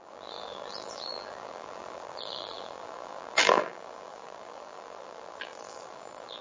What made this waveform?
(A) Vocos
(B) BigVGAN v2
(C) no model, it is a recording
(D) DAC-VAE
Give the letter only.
B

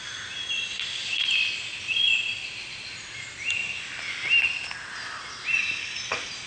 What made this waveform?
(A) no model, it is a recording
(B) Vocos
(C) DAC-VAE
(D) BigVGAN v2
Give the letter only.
A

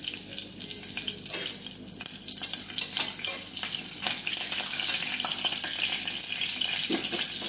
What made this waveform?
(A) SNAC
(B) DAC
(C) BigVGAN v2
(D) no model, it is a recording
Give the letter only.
D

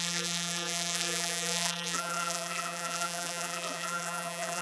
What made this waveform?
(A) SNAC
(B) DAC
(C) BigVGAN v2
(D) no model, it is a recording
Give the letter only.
C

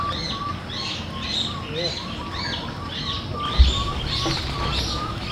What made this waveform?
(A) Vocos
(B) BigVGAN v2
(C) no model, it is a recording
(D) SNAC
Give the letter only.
C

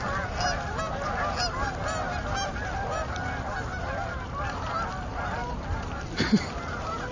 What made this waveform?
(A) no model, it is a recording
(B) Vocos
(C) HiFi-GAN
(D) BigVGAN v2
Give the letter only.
A